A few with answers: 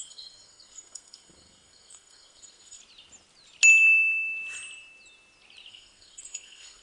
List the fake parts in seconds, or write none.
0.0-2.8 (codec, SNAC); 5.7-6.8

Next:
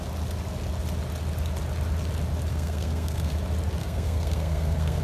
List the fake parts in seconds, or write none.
2.5-3.3 (codec, SNAC); 3.8-5.0

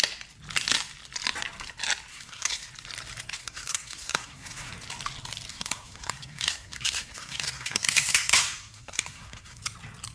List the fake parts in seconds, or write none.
2.1-2.7 (codec, SNAC); 3.4-4.7; 5.5-9.6